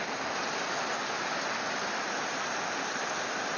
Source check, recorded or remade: recorded